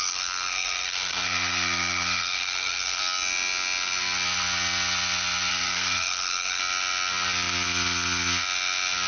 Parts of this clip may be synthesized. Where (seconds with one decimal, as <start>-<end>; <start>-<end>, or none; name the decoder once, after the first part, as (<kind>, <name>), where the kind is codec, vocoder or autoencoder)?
0.0-3.0 (codec, SNAC); 5.5-6.6